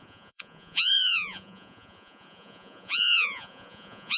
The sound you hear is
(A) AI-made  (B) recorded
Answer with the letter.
A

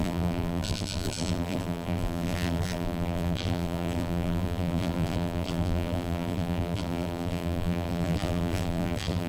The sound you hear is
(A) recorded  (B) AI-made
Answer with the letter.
B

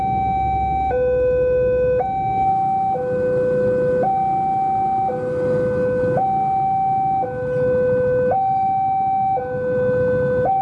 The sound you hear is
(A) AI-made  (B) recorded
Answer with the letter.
B